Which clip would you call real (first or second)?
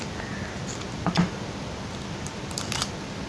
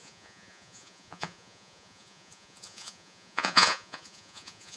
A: first